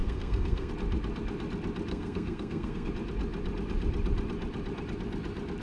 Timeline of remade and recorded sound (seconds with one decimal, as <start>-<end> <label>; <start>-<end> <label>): 0.0-0.7 remade; 0.7-1.9 recorded; 1.9-2.9 remade; 2.9-5.6 recorded